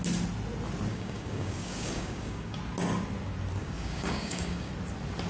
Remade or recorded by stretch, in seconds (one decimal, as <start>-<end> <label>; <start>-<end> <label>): 0.0-0.9 recorded; 0.9-2.6 remade; 2.6-3.6 recorded; 3.6-4.7 remade; 4.7-5.3 recorded